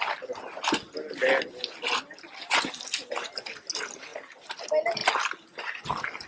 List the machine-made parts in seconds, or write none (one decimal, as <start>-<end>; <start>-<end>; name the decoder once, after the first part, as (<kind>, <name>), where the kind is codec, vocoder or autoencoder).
4.1-4.6 (vocoder, BigVGAN v2)